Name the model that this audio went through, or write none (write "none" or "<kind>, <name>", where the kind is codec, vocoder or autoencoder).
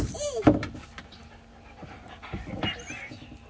none